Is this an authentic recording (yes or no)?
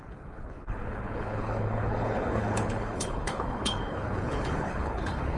no